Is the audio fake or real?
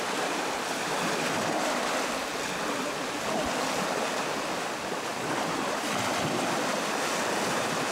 real